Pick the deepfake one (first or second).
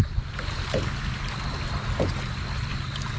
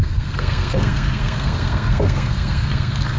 second